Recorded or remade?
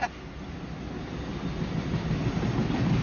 recorded